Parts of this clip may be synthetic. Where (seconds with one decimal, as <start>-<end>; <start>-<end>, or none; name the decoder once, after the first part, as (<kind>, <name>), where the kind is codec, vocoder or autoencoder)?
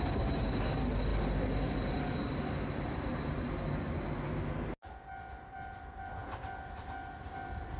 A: none